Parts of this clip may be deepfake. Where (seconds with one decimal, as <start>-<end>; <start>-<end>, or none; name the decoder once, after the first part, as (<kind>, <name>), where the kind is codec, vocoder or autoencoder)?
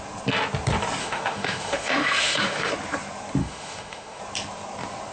1.0-2.7 (autoencoder, DAC-VAE); 3.4-4.2